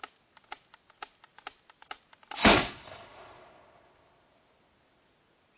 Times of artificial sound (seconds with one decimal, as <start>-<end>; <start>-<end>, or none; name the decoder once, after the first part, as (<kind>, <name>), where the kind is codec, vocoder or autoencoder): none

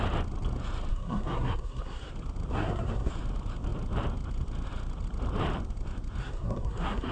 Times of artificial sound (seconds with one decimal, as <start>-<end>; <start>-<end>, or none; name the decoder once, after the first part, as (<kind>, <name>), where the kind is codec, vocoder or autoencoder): 0.9-2.1 (codec, SNAC); 2.5-3.1; 6.2-7.1

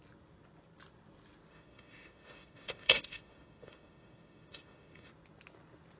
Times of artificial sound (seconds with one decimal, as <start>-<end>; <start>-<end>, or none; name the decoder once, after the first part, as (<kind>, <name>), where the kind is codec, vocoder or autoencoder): 1.5-5.1 (autoencoder, DAC-VAE)